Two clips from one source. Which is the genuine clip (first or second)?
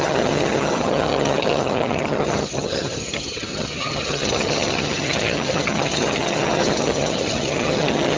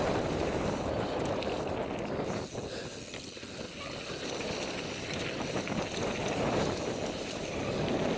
second